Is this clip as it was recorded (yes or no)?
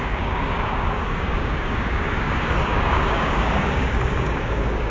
no